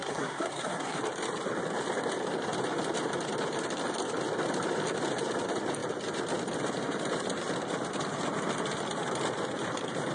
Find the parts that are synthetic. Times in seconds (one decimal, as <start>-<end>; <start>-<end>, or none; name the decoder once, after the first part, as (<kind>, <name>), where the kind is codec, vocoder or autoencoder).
0.0-1.0 (codec, SNAC)